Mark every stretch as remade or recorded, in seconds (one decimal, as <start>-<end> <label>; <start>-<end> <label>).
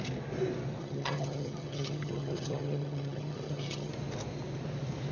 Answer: 0.0-0.8 recorded; 0.8-3.9 remade; 3.9-5.1 recorded